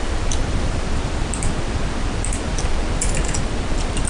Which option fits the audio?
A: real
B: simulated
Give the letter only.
B